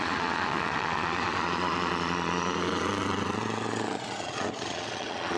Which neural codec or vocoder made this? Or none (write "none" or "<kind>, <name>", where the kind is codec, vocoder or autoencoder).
vocoder, Vocos